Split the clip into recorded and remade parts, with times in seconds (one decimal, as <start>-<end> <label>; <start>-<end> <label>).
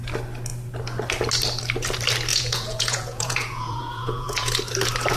0.0-2.3 recorded; 2.3-4.5 remade; 4.5-5.2 recorded